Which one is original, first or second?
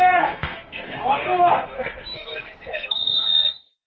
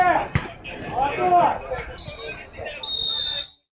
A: second